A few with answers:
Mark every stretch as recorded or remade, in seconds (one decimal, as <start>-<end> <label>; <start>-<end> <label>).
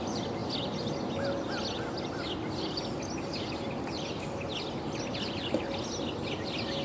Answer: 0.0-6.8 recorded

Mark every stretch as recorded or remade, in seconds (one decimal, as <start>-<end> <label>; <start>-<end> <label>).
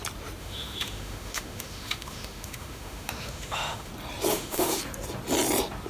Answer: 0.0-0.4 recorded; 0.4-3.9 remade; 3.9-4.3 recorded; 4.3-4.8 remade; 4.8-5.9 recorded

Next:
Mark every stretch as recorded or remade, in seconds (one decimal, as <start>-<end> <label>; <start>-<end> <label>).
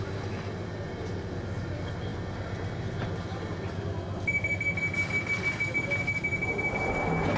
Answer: 0.0-7.4 recorded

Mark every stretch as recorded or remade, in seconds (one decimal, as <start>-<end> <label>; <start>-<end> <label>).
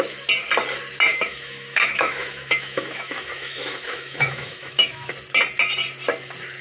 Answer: 0.0-1.1 recorded; 1.1-5.1 remade; 5.1-6.6 recorded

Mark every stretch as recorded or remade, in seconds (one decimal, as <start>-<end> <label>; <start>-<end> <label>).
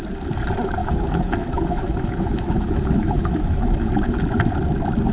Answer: 0.0-0.8 recorded; 0.8-3.9 remade; 3.9-5.1 recorded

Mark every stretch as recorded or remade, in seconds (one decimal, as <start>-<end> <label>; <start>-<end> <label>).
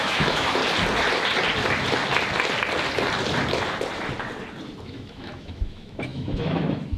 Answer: 0.0-0.6 remade; 0.6-4.8 recorded; 4.8-7.0 remade